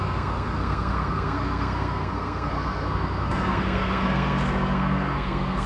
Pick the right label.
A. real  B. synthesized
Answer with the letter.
B